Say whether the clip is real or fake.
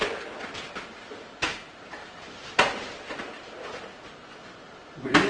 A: fake